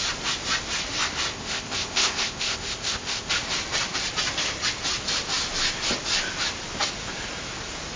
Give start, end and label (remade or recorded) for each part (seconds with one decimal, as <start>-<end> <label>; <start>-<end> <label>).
0.0-1.3 recorded; 1.3-3.3 remade; 3.3-8.0 recorded